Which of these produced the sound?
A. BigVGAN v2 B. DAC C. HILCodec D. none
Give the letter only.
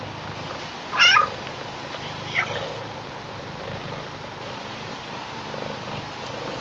D